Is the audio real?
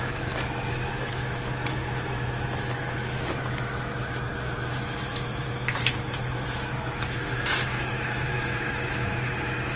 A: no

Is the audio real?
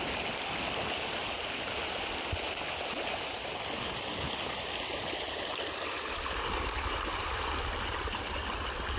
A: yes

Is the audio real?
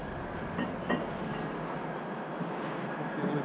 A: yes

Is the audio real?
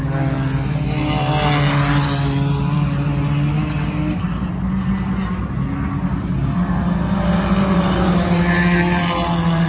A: yes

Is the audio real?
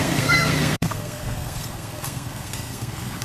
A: no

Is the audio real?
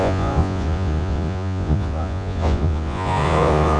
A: no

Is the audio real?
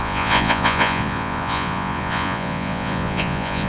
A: no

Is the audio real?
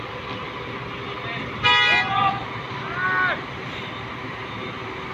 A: yes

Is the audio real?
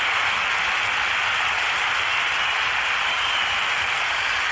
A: yes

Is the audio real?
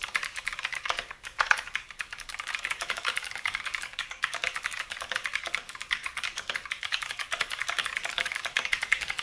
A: no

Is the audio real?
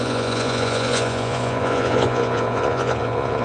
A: no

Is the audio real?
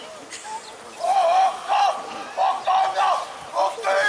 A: yes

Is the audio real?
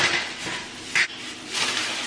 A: yes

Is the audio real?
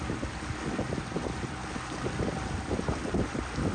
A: yes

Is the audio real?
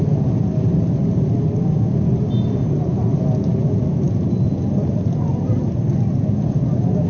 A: yes